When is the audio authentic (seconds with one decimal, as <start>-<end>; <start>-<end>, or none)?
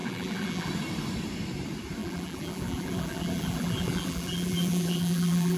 0.7-2.0